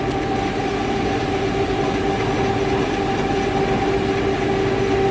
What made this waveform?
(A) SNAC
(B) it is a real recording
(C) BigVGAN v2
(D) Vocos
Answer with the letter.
B